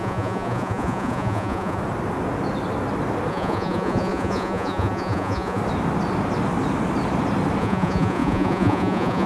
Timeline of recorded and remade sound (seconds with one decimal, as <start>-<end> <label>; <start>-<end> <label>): 0.0-1.8 remade; 1.8-3.3 recorded; 3.3-5.6 remade; 5.6-7.6 recorded; 7.6-9.3 remade